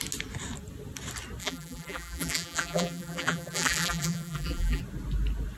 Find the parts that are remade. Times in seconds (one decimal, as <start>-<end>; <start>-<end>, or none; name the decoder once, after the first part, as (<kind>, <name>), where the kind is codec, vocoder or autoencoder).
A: 1.4-4.8 (vocoder, BigVGAN v2)